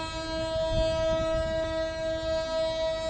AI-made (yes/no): no